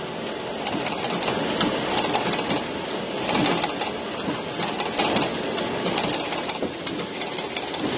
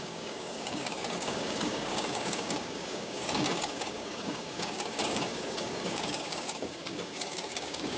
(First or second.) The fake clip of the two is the second